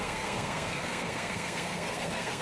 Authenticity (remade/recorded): remade